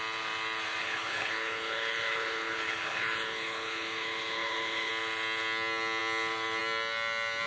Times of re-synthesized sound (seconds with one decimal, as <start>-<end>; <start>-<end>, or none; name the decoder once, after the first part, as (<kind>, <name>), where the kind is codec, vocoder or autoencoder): 0.8-4.9 (codec, HILCodec)